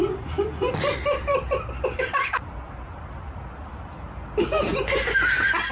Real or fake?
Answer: real